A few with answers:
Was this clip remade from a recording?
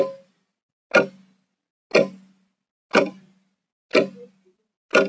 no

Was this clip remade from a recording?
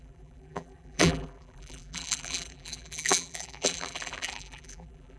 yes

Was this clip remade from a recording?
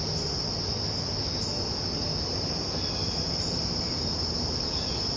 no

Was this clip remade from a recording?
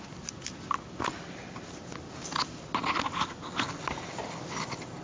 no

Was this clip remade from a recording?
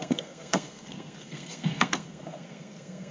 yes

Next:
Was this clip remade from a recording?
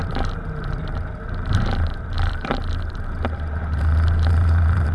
yes